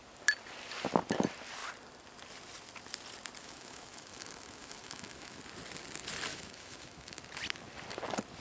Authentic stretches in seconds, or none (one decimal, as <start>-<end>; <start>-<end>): 0.0-3.4; 5.4-6.3; 7.2-8.4